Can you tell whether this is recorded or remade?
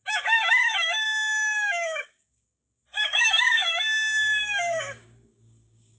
remade